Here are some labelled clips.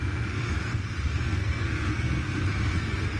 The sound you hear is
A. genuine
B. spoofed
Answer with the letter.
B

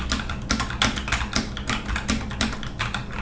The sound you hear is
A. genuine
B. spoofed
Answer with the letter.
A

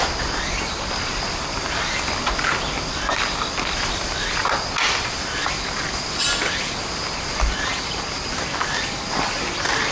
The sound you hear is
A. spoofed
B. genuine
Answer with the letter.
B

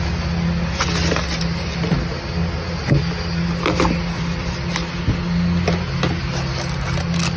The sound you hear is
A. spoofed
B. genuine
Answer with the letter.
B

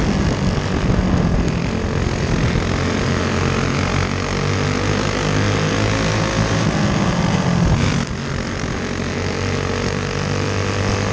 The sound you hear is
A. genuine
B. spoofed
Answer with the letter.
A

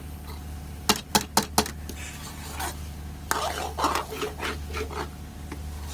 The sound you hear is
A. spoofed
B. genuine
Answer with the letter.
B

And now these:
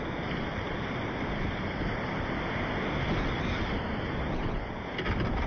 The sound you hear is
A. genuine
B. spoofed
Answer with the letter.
A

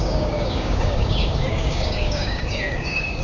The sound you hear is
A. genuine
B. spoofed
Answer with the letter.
B